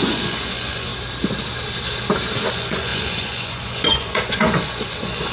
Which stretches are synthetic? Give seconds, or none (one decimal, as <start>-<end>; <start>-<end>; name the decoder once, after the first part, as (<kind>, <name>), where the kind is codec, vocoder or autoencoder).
0.0-0.9 (vocoder, Vocos); 2.5-5.3